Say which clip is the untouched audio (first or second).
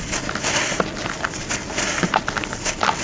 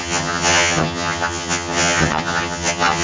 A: first